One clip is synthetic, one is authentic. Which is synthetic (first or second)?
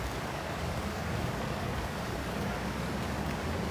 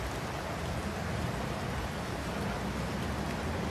first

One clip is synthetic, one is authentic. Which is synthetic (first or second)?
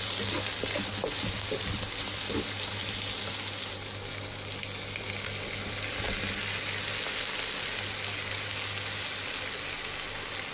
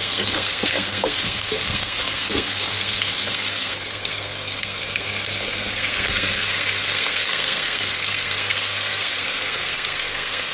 second